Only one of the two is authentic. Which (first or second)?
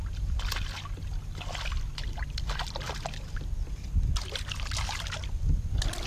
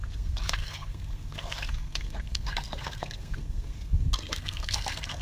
first